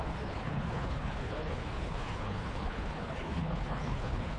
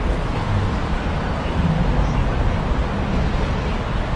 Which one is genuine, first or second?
second